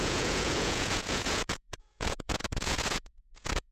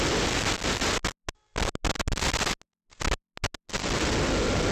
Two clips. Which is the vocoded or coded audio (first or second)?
first